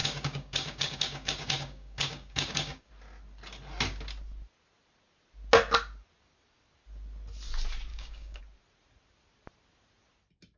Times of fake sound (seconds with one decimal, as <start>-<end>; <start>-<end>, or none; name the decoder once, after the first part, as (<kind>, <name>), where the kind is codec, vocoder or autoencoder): 0.0-2.9 (codec, DAC); 7.9-8.4